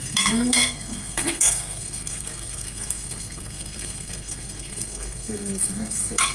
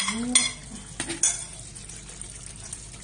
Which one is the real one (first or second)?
second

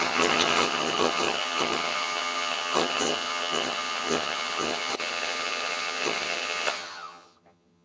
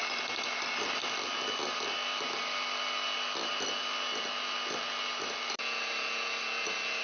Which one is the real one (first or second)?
second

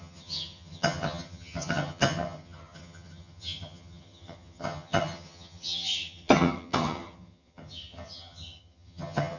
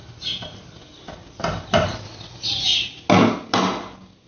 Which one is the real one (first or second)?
second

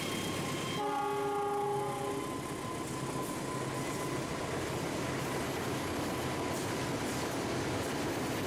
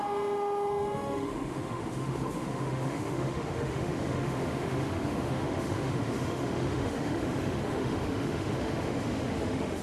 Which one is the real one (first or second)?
first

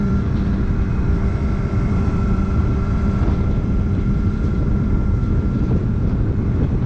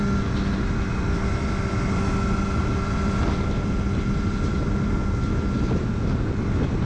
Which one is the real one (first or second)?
second